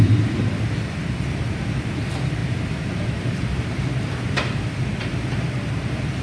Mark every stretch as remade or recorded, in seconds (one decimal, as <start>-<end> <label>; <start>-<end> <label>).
0.0-2.4 recorded; 2.4-6.2 remade